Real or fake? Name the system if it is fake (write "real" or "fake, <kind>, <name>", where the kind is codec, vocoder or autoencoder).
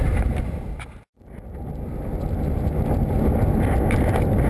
real